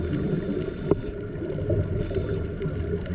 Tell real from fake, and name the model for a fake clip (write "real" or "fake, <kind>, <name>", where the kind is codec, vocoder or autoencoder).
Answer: real